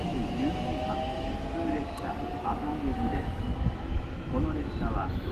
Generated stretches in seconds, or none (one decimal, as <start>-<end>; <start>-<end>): 0.0-1.3; 2.3-5.3

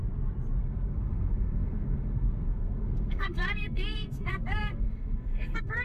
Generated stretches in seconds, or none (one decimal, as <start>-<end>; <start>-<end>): 0.6-5.8

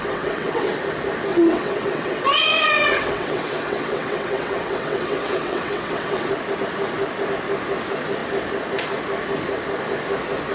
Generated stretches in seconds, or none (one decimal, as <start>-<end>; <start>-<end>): 0.0-0.7; 1.3-6.3

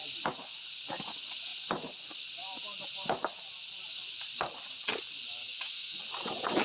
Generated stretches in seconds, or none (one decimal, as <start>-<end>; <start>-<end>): 5.4-6.0

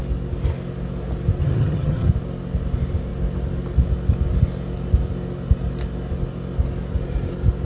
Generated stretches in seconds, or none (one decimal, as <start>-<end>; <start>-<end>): 1.4-2.1